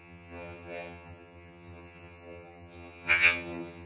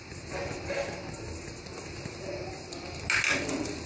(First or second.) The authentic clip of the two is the second